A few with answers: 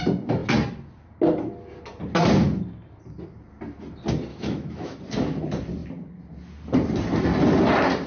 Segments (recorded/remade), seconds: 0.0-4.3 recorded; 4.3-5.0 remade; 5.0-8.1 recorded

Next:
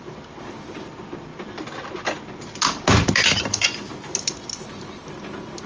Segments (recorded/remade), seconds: 0.0-5.7 recorded

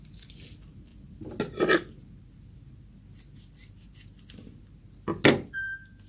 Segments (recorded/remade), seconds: 0.0-6.1 recorded

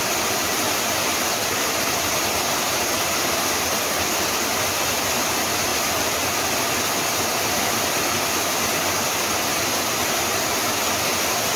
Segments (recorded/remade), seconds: 0.0-11.6 recorded

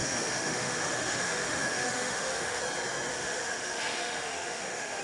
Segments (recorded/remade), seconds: 0.0-2.6 remade; 2.6-3.1 recorded; 3.1-5.0 remade

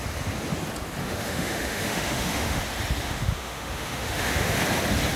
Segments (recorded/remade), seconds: 0.0-1.0 recorded; 1.0-2.6 remade; 2.6-3.0 recorded; 3.0-4.6 remade; 4.6-5.2 recorded

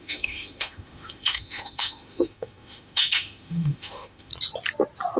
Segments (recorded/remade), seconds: 0.0-4.3 remade; 4.3-5.2 recorded

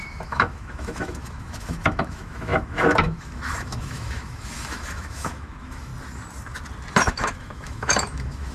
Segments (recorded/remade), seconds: 0.0-5.9 remade; 5.9-7.0 recorded; 7.0-8.5 remade